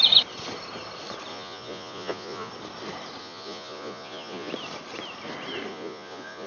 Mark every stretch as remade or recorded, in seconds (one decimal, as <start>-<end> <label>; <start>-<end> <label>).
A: 0.0-1.3 recorded; 1.3-2.5 remade; 2.5-3.2 recorded; 3.2-4.5 remade; 4.5-5.7 recorded; 5.7-6.5 remade